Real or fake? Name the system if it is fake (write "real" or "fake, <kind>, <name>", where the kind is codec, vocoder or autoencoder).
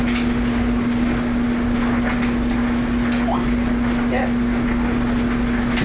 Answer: real